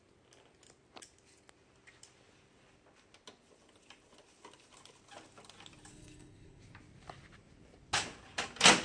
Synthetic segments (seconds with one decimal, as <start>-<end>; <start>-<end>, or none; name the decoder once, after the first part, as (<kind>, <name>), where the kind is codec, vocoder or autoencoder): 5.9-6.6 (codec, SNAC)